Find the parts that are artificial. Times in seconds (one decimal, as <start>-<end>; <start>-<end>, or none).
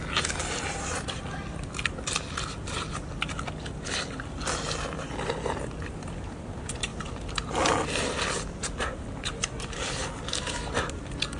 none